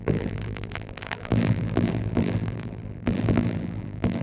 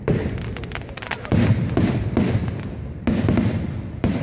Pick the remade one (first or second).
first